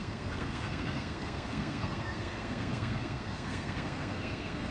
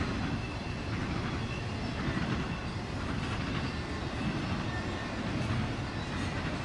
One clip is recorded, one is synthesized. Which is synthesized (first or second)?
first